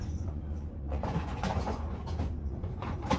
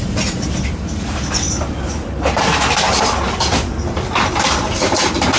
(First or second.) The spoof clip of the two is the first